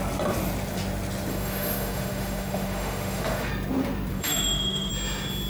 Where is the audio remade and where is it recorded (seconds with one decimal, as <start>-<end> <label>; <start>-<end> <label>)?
0.0-1.3 recorded; 1.3-3.5 remade; 3.5-4.1 recorded; 4.1-4.9 remade; 4.9-5.5 recorded